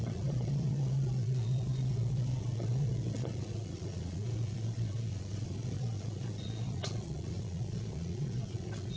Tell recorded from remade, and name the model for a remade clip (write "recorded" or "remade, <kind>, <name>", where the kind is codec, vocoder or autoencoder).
remade, vocoder, Vocos